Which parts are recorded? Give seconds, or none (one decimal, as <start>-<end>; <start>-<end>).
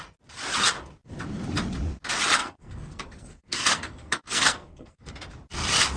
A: 0.0-2.4; 5.1-6.0